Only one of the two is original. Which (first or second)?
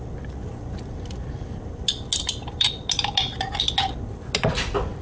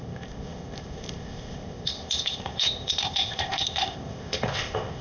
first